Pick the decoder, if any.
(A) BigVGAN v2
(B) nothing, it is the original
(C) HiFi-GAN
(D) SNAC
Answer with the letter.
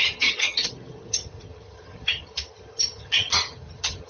C